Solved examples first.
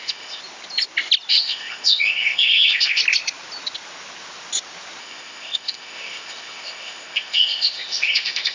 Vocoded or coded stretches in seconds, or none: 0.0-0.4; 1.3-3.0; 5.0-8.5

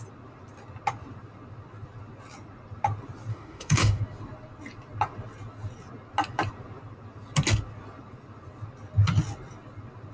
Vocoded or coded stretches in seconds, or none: 3.3-4.0